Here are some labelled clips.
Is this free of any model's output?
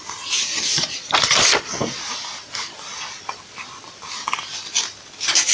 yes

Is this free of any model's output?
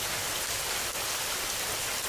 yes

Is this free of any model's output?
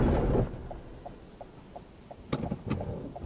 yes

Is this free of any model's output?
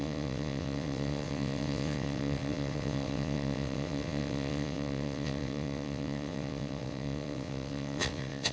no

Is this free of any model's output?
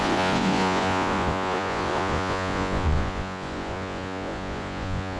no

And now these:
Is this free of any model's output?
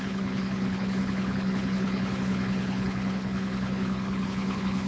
no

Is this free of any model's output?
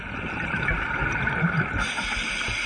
yes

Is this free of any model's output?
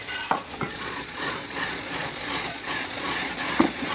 no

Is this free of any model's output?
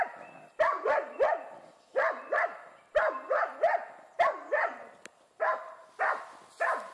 yes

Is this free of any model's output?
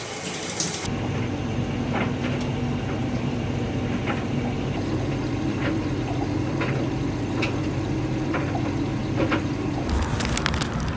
yes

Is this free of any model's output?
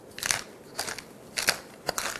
yes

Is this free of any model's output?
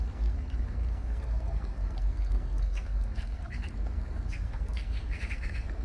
no